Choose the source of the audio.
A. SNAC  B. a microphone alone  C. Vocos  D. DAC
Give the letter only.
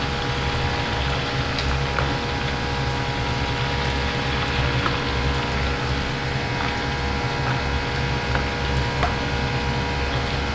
B